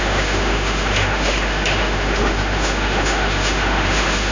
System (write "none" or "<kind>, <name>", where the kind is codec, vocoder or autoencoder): autoencoder, DAC-VAE